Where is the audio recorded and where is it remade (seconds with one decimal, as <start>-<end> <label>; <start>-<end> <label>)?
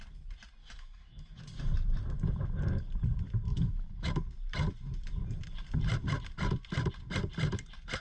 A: 0.0-0.6 recorded; 0.6-1.4 remade; 1.4-3.5 recorded; 3.5-4.1 remade; 4.1-8.0 recorded